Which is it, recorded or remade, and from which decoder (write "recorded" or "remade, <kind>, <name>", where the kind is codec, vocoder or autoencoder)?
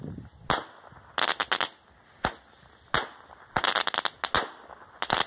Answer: recorded